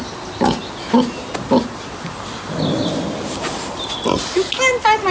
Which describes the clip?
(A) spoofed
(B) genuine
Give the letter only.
B